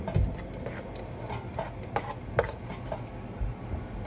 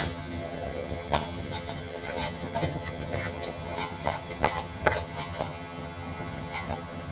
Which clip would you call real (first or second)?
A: first